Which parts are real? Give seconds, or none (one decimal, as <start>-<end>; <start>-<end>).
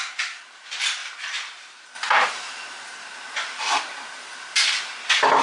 0.0-5.4